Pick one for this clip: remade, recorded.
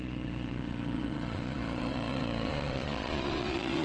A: remade